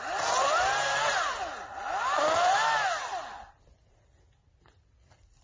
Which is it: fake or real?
real